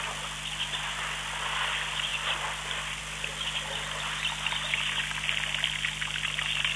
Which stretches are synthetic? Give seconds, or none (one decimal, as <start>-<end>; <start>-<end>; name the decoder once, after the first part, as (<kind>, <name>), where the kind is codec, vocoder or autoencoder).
none